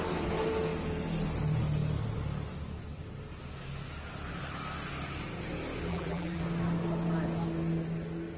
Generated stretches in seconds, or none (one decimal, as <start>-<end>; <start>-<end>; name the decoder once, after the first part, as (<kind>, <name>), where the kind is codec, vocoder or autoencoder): 5.9-6.4 (vocoder, BigVGAN v2)